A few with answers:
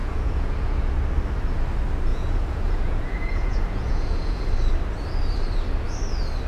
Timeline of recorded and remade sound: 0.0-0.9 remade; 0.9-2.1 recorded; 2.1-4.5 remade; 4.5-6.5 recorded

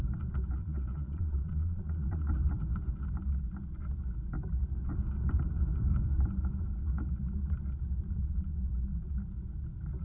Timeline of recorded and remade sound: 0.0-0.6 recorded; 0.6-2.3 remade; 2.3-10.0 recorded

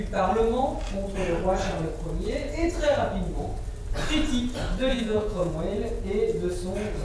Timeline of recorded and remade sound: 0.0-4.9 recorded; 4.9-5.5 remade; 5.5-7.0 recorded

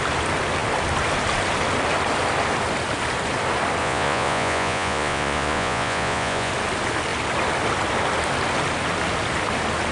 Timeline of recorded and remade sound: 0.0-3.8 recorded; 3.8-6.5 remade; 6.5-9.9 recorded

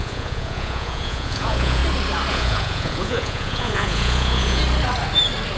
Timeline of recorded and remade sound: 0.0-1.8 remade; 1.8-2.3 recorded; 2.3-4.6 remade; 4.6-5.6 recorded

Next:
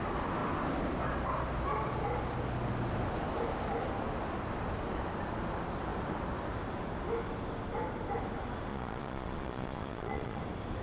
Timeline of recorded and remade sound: 0.0-8.7 recorded; 8.7-10.4 remade; 10.4-10.8 recorded

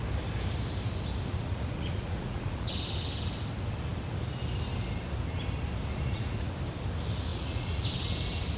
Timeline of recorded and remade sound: 0.0-1.3 recorded; 1.3-2.7 remade; 2.7-5.9 recorded; 5.9-6.5 remade; 6.5-7.3 recorded; 7.3-7.9 remade; 7.9-8.6 recorded

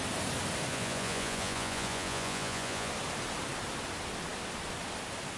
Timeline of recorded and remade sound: 0.0-0.7 recorded; 0.7-2.9 remade; 2.9-5.4 recorded